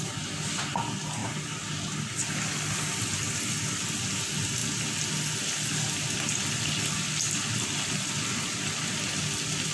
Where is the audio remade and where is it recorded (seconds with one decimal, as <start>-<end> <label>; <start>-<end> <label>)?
0.0-9.7 recorded